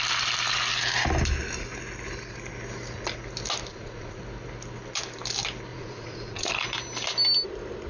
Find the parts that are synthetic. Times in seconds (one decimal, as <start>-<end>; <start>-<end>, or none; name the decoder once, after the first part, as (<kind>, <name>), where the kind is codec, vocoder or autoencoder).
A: 3.7-4.2 (vocoder, Vocos); 5.7-6.5